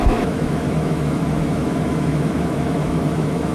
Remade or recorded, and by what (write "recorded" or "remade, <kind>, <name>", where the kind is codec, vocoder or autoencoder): remade, autoencoder, DAC-VAE